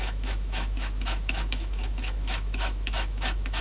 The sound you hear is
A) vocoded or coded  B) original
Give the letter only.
A